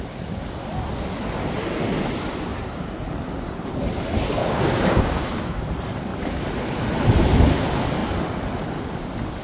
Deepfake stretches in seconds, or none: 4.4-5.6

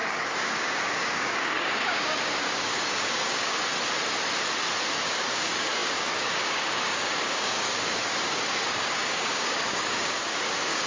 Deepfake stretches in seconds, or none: 0.0-3.7; 5.0-10.9

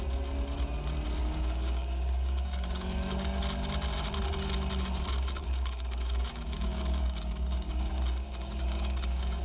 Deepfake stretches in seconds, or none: 1.2-3.4; 5.4-9.4

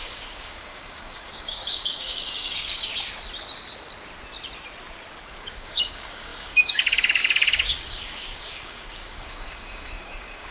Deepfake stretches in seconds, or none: 0.0-2.9; 5.3-10.5